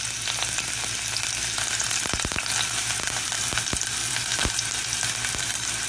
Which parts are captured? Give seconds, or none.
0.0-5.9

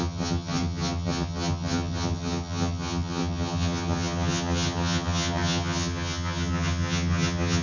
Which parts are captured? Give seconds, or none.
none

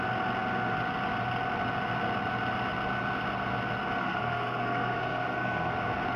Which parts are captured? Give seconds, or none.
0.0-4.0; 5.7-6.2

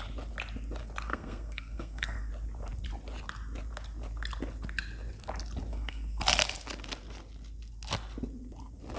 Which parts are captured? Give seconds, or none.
0.0-1.1; 2.3-5.7; 6.2-9.0